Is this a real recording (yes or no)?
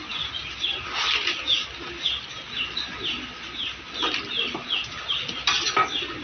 yes